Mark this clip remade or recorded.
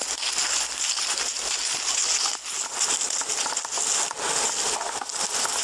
recorded